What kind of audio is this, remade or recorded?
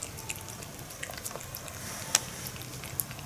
recorded